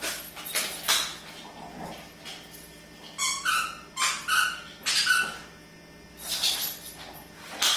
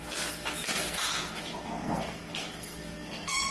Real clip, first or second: first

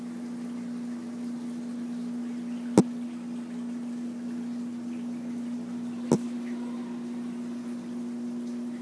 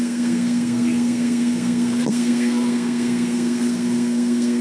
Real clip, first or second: first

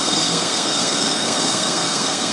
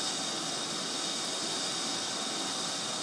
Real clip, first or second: second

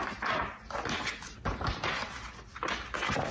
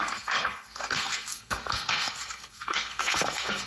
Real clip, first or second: first